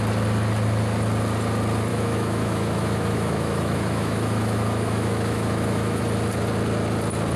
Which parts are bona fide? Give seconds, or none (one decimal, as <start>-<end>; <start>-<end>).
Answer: 0.0-1.9; 6.0-7.4